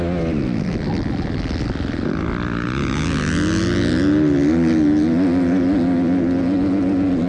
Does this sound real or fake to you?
real